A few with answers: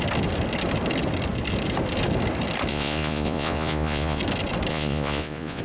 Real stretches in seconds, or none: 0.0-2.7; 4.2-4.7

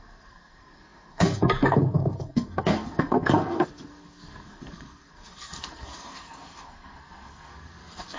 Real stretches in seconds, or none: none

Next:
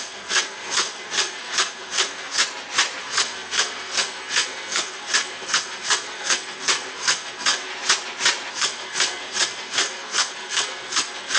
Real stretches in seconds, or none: 2.4-3.0; 7.7-8.5

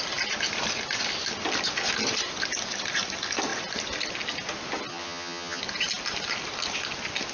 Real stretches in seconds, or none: 0.0-4.9; 5.6-7.3

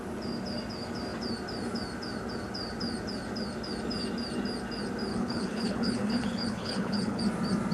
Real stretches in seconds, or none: 0.0-5.1; 7.2-7.7

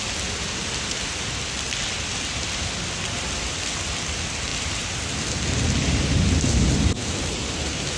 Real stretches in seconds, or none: 0.0-8.0

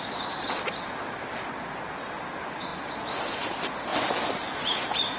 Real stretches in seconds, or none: 0.0-5.2